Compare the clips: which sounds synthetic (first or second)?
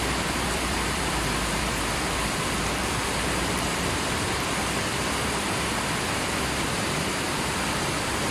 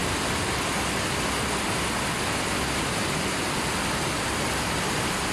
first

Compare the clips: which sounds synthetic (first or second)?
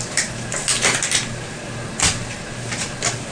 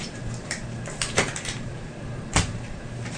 second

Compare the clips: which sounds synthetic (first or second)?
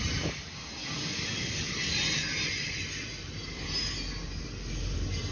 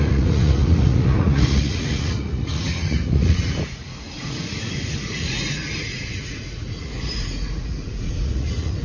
second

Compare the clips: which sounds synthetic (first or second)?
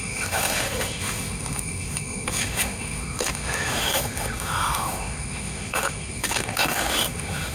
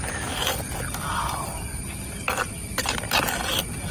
first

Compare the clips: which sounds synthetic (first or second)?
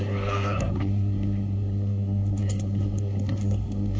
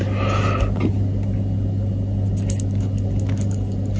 first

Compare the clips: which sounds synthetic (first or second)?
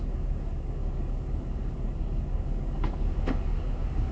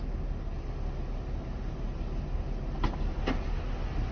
first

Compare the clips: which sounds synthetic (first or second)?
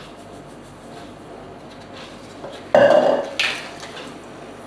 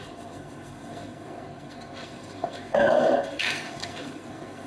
second